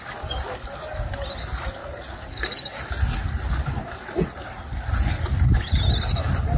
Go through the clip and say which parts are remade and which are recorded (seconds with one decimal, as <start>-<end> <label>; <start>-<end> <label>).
0.0-6.6 recorded